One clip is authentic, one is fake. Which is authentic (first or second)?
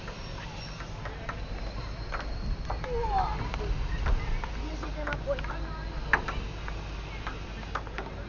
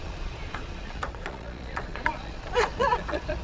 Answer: first